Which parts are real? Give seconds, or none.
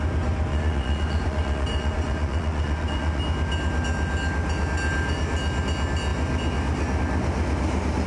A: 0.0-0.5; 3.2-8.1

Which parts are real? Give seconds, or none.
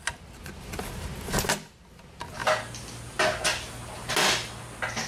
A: 0.0-5.1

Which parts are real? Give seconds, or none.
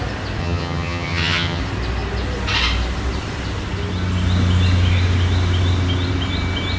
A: 0.0-0.4; 1.6-6.8